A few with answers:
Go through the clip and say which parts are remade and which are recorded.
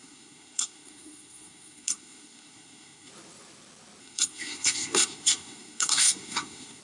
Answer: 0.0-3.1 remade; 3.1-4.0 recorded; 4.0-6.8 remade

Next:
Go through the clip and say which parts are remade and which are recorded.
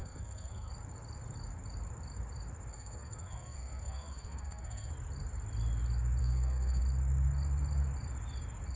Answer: 0.0-0.7 remade; 0.7-2.7 recorded; 2.7-4.9 remade; 4.9-6.2 recorded; 6.2-6.8 remade; 6.8-8.8 recorded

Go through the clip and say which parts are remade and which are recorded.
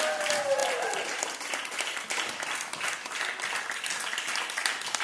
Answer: 0.0-5.0 recorded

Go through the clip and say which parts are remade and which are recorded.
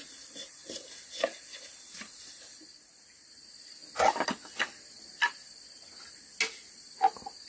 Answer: 0.0-7.5 recorded